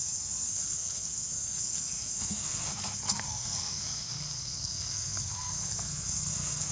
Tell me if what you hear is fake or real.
fake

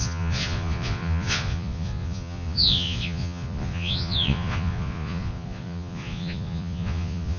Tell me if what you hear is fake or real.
fake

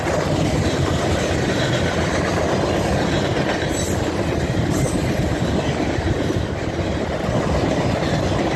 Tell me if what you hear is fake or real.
real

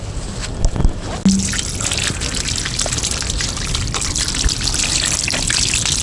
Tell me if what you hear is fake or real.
real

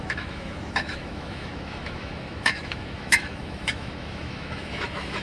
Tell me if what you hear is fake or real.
fake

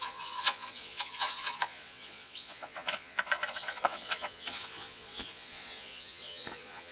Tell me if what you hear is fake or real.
fake